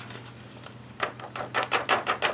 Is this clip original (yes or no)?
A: yes